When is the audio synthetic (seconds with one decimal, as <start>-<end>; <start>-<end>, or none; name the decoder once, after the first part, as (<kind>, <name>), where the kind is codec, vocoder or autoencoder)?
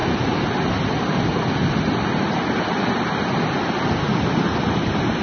none